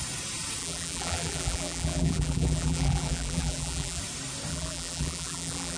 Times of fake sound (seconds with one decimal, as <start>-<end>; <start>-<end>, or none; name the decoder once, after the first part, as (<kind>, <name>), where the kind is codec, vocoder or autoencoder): 0.6-4.0 (vocoder, BigVGAN v2); 4.5-5.8